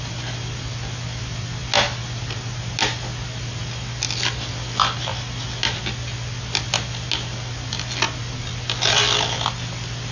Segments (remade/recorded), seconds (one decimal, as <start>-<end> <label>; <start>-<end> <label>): 0.0-10.1 recorded